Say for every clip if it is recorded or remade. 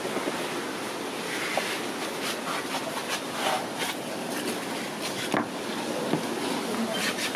recorded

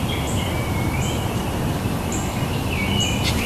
recorded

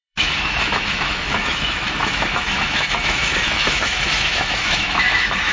remade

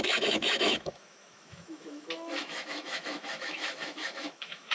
remade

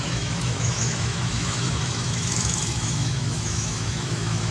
remade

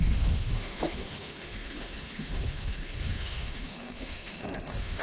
remade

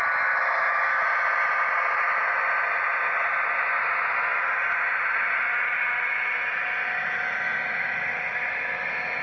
recorded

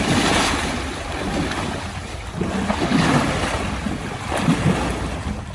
recorded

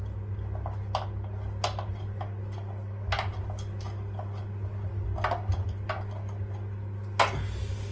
recorded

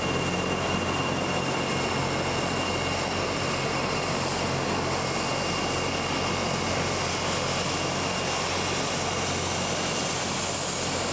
recorded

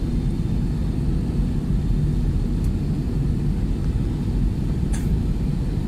recorded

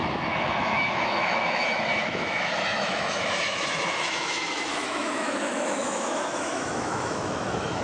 remade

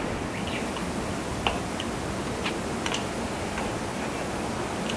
recorded